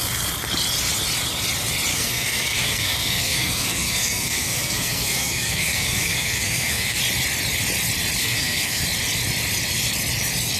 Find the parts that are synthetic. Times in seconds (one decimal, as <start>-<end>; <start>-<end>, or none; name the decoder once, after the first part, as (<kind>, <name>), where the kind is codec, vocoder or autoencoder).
1.9-7.0 (codec, SNAC); 8.2-8.8